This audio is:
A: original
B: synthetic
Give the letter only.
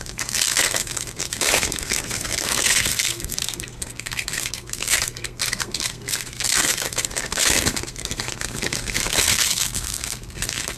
B